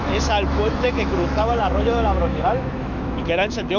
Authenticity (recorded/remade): remade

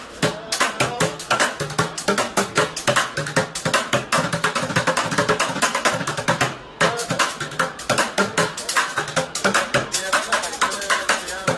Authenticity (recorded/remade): remade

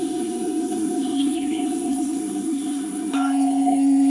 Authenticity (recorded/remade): remade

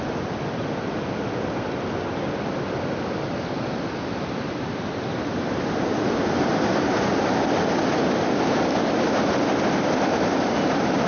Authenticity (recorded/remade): recorded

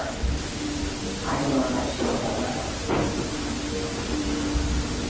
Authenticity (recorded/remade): recorded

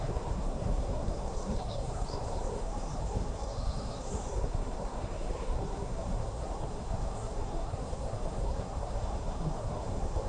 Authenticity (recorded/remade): remade